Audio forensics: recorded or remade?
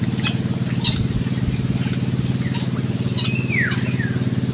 recorded